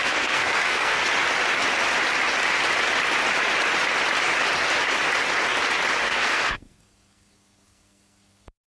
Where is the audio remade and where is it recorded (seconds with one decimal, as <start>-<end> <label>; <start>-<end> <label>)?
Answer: 0.0-1.0 remade; 1.0-6.0 recorded; 6.0-8.7 remade